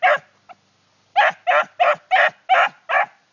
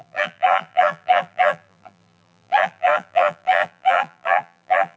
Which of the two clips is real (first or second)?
first